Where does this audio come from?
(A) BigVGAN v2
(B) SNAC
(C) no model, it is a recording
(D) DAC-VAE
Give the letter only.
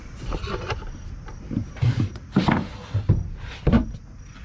C